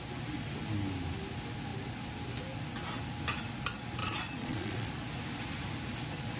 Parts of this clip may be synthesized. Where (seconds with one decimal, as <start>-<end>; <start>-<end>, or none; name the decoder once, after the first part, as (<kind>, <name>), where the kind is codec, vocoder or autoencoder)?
4.0-4.9 (vocoder, Vocos)